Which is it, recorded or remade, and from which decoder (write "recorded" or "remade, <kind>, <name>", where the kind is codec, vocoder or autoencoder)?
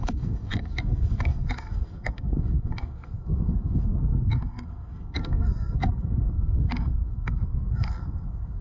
remade, codec, SNAC